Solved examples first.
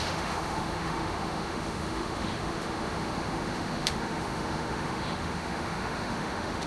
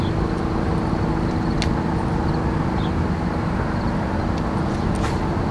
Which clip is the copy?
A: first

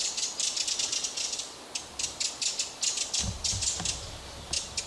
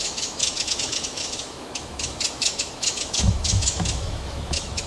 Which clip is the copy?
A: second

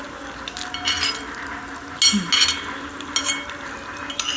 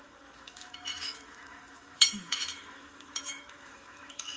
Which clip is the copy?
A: second